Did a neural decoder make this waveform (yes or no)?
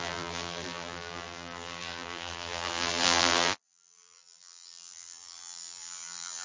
yes